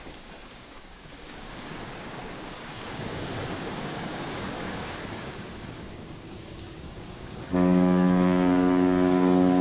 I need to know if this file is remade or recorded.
remade